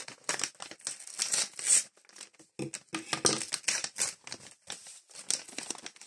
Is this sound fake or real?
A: real